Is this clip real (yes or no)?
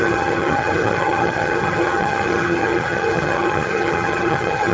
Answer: no